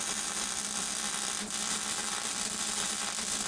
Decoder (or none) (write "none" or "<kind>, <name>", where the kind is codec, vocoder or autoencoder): vocoder, BigVGAN v2